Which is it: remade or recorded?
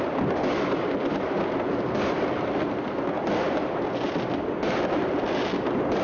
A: recorded